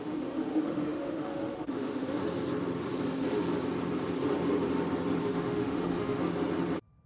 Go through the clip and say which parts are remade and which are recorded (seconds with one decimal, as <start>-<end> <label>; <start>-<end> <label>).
0.0-2.2 remade; 2.2-5.2 recorded; 5.2-6.2 remade; 6.2-7.1 recorded